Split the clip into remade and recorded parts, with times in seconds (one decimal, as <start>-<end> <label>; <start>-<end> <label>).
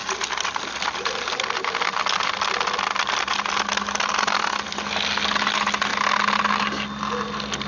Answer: 0.0-7.7 recorded